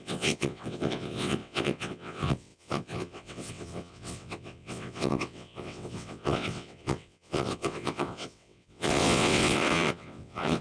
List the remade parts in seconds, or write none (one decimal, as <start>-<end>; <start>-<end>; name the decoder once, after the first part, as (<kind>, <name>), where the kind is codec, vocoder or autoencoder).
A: 0.0-10.6 (vocoder, WaveNeXt)